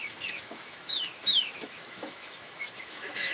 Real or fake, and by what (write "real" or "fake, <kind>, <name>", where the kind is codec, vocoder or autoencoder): fake, autoencoder, DAC-VAE